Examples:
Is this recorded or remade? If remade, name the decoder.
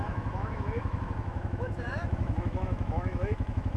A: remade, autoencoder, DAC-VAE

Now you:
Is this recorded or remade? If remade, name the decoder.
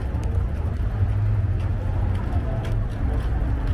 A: recorded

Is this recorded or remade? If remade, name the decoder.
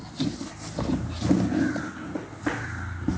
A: recorded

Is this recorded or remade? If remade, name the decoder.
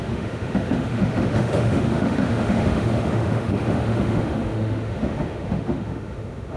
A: remade, autoencoder, DAC-VAE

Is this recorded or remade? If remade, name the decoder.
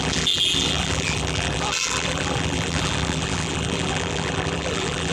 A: remade, vocoder, BigVGAN v2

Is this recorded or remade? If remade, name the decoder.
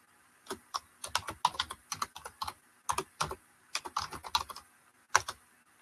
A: recorded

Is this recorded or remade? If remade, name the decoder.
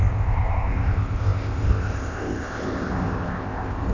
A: remade, codec, ZipCodec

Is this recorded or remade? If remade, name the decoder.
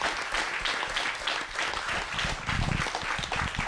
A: recorded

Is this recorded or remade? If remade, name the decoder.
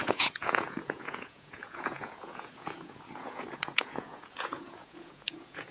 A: remade, vocoder, Vocos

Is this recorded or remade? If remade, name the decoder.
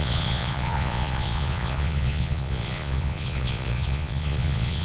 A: remade, vocoder, Vocos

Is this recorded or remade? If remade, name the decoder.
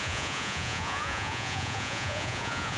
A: remade, vocoder, Vocos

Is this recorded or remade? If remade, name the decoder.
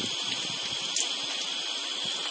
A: recorded